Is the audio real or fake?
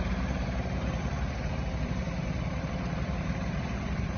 fake